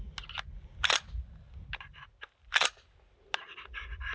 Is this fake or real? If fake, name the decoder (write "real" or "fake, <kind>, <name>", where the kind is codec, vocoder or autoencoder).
real